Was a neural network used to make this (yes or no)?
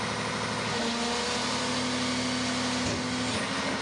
no